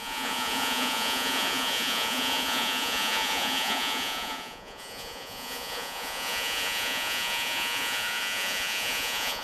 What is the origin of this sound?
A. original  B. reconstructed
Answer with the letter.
B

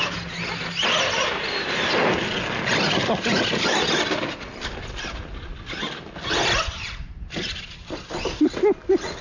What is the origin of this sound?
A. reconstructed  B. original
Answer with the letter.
B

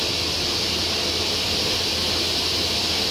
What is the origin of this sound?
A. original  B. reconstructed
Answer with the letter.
A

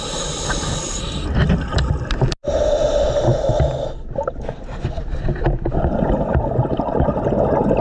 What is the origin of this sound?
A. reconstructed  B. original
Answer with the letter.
B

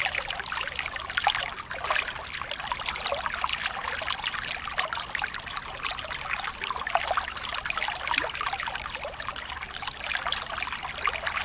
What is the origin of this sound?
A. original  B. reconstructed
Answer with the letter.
A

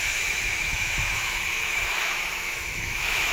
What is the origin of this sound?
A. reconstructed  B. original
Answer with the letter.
A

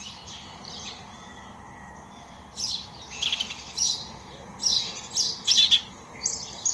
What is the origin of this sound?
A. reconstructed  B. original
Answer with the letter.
B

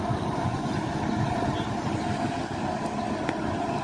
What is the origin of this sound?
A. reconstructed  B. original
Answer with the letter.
B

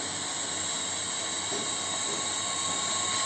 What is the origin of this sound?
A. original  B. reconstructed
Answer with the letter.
A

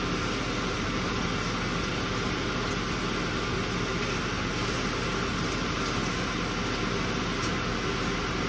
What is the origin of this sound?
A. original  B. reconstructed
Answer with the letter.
A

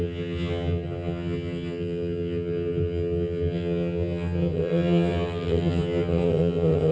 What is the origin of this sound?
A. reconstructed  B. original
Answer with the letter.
A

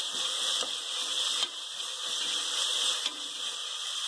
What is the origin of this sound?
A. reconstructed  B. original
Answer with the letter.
B